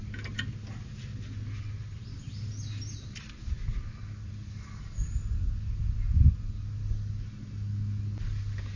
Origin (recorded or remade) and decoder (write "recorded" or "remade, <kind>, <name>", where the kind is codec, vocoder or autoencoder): recorded